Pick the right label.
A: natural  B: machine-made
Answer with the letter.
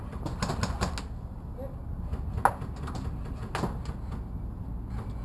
A